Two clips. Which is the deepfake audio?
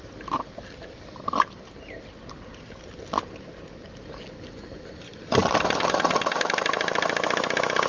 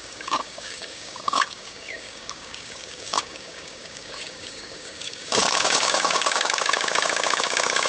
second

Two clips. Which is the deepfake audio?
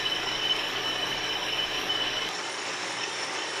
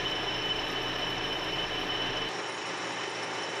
first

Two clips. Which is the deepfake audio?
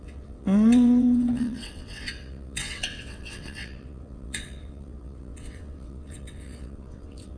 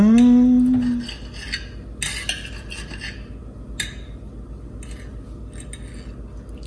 first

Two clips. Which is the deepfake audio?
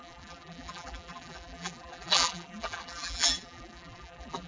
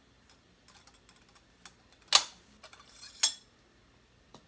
first